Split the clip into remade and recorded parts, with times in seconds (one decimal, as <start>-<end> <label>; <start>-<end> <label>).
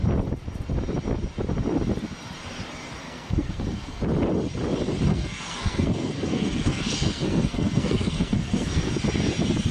0.0-3.0 recorded; 3.0-4.0 remade; 4.0-5.1 recorded; 5.1-8.9 remade; 8.9-9.7 recorded